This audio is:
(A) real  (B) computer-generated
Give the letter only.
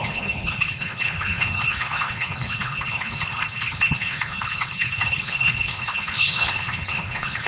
B